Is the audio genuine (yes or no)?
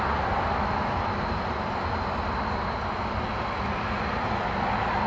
yes